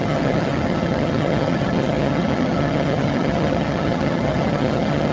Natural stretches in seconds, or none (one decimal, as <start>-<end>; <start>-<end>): none